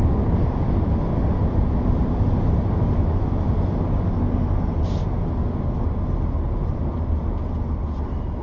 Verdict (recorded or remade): recorded